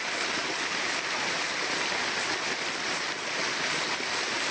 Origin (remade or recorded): recorded